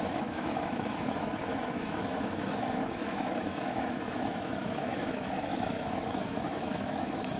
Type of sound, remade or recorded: remade